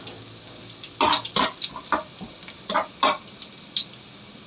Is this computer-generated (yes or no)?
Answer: no